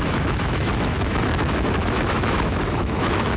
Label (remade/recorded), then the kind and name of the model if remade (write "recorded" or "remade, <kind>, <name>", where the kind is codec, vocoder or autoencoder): remade, autoencoder, DAC-VAE